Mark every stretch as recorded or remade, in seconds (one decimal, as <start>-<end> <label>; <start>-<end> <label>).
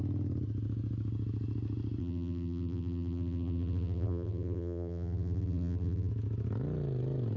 0.0-2.0 recorded; 2.0-6.1 remade; 6.1-7.4 recorded